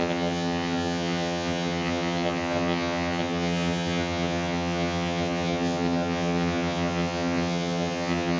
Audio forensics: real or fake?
fake